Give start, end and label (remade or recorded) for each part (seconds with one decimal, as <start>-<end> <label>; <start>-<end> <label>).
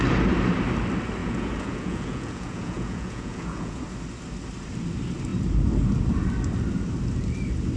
0.0-1.2 recorded; 1.2-3.8 remade; 3.8-7.8 recorded